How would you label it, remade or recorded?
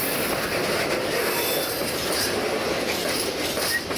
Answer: recorded